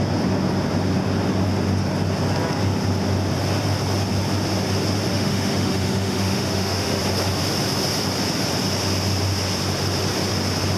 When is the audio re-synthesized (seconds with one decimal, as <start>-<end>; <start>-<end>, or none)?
5.1-7.0